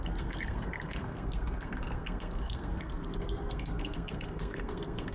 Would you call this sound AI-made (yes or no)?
yes